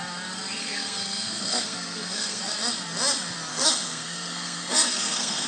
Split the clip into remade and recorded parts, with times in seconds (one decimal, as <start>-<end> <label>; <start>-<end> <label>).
0.0-0.6 recorded; 0.6-2.4 remade; 2.4-3.5 recorded; 3.5-5.5 remade